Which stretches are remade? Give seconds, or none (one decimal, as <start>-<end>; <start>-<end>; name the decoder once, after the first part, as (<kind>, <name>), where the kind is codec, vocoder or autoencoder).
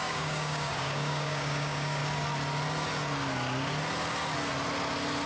0.0-2.0 (codec, DAC)